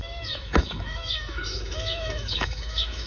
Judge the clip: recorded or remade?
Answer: remade